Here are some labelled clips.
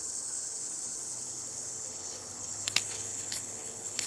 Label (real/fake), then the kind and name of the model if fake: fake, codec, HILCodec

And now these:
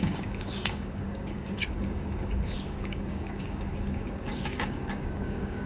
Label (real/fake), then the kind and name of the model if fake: fake, codec, DAC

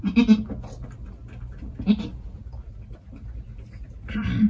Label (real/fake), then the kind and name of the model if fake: real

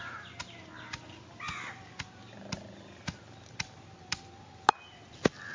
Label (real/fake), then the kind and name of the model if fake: real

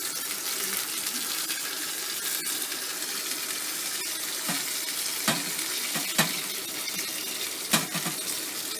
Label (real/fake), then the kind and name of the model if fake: real